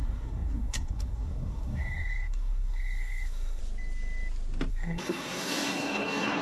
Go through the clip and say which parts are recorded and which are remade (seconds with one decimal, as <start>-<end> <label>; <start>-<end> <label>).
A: 0.0-3.6 remade; 3.6-4.7 recorded; 4.7-6.4 remade